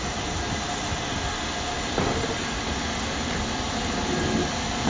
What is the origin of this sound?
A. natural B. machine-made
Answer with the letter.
A